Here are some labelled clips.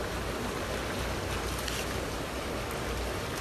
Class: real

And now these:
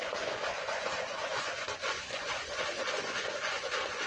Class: fake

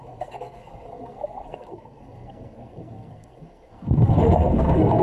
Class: fake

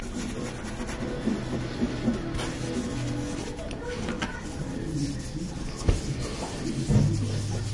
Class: real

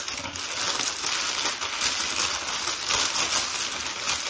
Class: real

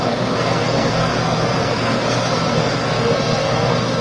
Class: fake